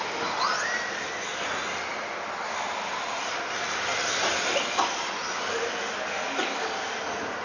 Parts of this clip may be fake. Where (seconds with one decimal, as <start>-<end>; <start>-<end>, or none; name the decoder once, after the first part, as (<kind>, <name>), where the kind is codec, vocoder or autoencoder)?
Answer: none

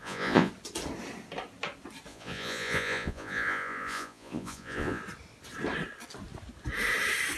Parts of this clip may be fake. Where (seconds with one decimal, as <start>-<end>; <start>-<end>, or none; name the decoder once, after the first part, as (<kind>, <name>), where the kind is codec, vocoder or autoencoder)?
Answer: 0.0-0.5 (vocoder, Vocos); 2.1-5.0

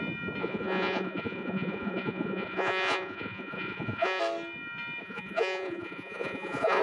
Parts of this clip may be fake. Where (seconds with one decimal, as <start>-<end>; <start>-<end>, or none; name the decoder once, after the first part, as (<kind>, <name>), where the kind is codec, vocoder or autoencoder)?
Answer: 0.4-4.2 (vocoder, Vocos); 5.0-6.8